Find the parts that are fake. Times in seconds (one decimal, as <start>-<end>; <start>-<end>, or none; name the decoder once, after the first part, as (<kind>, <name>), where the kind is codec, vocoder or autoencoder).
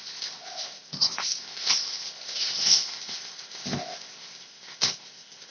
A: 0.0-5.5 (codec, ZipCodec)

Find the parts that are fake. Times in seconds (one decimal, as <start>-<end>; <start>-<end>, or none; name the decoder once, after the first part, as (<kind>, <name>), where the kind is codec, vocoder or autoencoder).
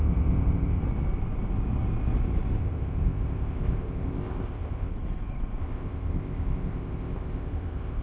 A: 0.0-0.8 (codec, ZipCodec); 2.6-4.9; 5.6-8.0